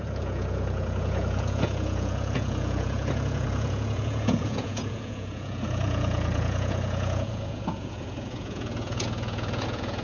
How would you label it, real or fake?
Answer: fake